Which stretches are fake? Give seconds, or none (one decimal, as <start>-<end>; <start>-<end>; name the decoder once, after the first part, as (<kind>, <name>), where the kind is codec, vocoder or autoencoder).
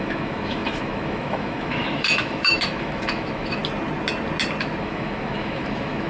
0.0-3.6 (autoencoder, DAC-VAE); 4.6-6.1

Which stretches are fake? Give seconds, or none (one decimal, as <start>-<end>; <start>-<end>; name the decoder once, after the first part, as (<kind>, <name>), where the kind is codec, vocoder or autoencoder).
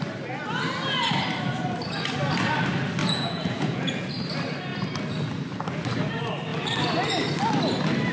3.0-4.1 (vocoder, Vocos)